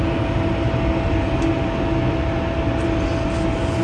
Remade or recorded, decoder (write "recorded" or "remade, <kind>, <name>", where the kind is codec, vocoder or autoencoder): recorded